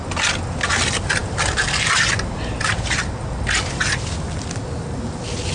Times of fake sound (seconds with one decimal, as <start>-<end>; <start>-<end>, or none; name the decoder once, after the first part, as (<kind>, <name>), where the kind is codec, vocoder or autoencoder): none